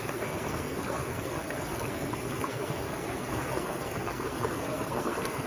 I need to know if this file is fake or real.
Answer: fake